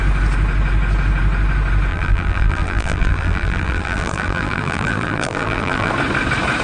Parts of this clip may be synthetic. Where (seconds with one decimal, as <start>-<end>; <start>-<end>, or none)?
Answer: 1.9-5.9